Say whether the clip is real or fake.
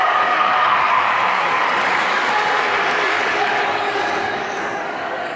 fake